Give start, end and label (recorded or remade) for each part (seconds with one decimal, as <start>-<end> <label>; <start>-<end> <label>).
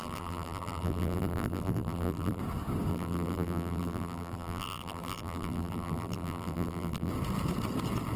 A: 0.0-2.4 remade; 2.4-2.9 recorded; 2.9-7.1 remade; 7.1-8.2 recorded